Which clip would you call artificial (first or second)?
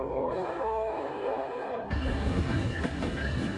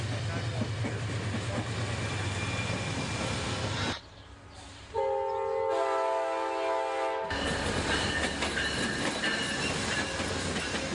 first